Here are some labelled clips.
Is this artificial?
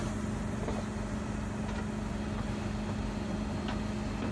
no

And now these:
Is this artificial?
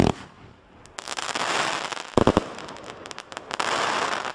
no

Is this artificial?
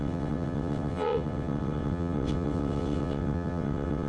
yes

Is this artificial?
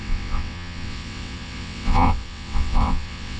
yes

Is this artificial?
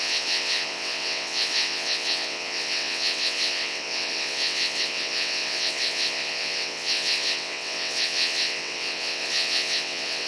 yes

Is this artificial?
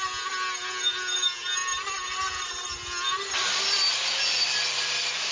no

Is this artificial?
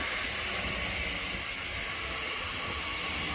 no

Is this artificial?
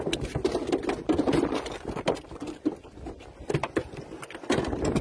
no